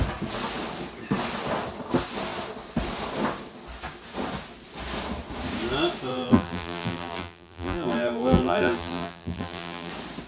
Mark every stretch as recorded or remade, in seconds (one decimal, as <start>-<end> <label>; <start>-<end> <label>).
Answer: 0.0-6.1 recorded; 6.1-9.9 remade; 9.9-10.3 recorded